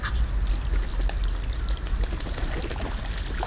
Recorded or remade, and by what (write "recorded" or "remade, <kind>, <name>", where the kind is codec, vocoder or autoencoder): recorded